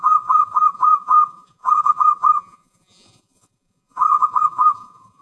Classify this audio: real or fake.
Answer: fake